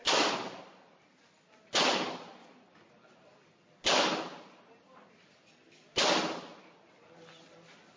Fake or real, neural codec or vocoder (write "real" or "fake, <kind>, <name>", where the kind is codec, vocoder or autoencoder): real